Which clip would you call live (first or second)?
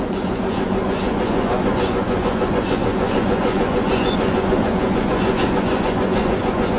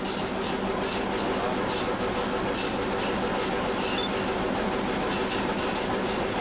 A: second